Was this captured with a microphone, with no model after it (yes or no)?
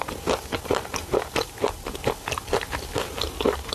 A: yes